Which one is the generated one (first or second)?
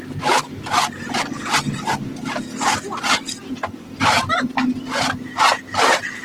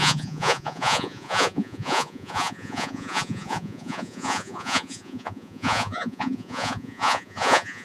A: second